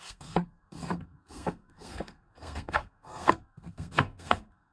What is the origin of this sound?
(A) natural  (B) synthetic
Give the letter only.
B